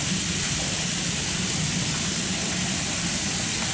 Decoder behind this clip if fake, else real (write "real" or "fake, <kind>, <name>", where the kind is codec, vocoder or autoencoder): real